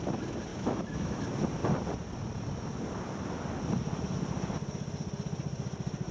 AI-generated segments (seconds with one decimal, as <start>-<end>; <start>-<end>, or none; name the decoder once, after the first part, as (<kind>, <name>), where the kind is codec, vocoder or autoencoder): 0.5-1.2 (autoencoder, DAC-VAE)